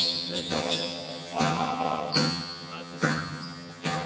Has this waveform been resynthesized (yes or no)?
yes